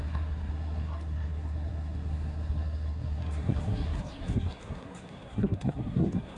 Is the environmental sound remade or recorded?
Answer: remade